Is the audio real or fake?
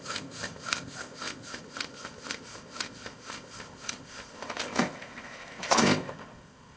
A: fake